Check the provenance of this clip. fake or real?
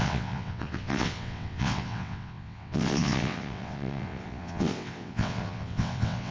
fake